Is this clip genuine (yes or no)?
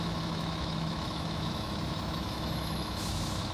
no